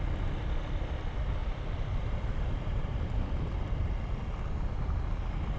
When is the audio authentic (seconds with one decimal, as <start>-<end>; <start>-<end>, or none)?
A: 0.0-1.4; 3.2-5.6